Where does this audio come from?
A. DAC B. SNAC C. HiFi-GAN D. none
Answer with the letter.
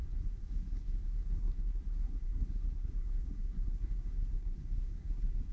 B